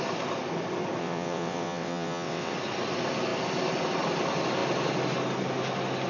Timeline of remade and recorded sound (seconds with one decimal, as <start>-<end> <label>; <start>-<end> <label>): 0.0-1.0 recorded; 1.0-2.5 remade; 2.5-6.1 recorded